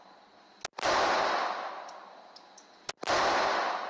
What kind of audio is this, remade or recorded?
recorded